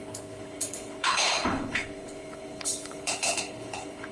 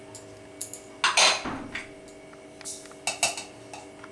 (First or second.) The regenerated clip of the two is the first